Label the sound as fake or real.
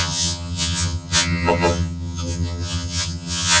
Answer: fake